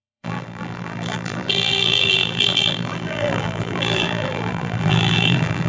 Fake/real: fake